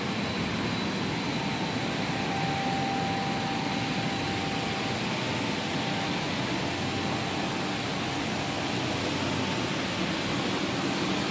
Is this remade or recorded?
recorded